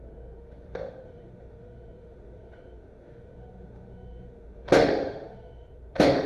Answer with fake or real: fake